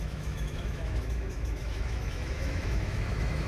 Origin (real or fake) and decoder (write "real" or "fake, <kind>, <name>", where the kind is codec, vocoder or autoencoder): fake, autoencoder, DAC-VAE